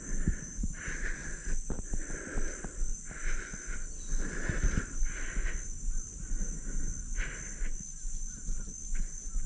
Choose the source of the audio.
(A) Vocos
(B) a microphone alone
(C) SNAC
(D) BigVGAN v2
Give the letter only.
B